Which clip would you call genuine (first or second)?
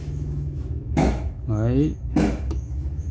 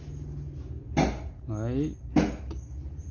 second